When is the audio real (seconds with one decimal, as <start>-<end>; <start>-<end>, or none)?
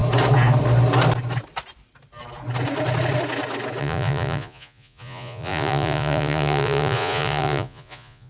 0.0-3.8